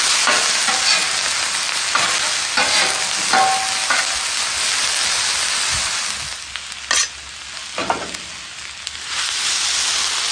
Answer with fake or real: real